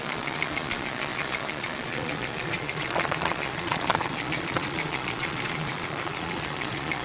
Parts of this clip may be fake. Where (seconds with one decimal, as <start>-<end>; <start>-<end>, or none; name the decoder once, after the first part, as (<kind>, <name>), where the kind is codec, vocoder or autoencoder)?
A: 0.0-7.0 (vocoder, Vocos)